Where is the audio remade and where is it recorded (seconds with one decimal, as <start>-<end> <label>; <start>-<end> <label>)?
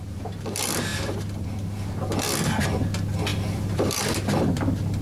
0.0-3.3 recorded; 3.3-4.5 remade; 4.5-5.0 recorded